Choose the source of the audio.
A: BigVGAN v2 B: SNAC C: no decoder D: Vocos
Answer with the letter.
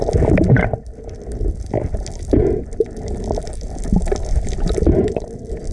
C